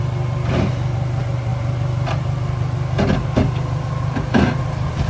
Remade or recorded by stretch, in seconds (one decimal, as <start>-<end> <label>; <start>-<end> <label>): 0.0-5.1 recorded